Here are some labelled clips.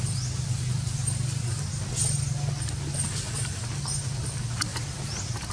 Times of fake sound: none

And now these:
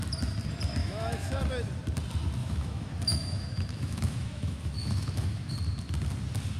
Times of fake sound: 0.8-1.4 (autoencoder, DAC-VAE); 2.4-5.5